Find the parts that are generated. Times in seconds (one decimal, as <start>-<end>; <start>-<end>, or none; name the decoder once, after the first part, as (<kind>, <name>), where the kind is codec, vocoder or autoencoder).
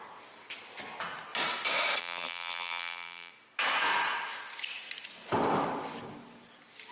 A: 2.0-3.3 (vocoder, BigVGAN v2)